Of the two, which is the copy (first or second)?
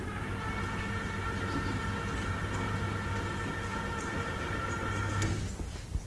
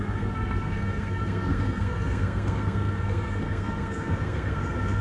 second